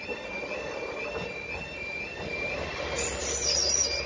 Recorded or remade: recorded